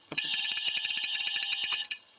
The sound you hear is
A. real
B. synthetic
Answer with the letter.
B